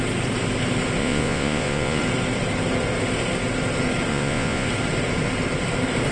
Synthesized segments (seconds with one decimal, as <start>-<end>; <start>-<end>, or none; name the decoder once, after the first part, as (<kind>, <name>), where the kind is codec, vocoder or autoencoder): 1.0-2.0 (vocoder, Vocos); 4.1-4.7